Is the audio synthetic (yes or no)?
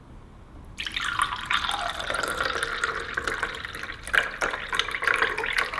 no